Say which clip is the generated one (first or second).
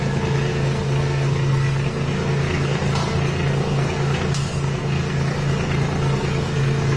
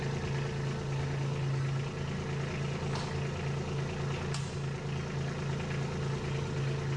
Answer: first